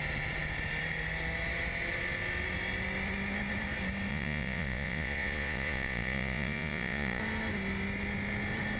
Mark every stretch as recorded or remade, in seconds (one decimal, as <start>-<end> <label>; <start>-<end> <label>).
0.0-4.1 recorded; 4.1-7.2 remade; 7.2-8.8 recorded